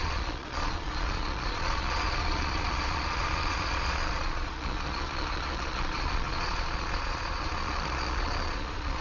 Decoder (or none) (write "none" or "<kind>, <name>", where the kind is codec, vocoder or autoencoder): vocoder, Vocos